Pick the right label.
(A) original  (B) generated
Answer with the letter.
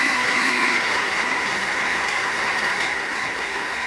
B